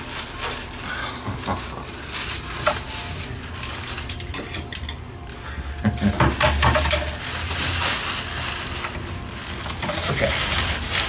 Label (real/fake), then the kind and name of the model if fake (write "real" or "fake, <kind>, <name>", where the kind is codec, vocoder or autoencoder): real